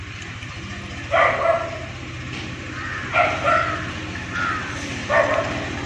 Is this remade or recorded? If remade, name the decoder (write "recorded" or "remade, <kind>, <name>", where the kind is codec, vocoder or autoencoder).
recorded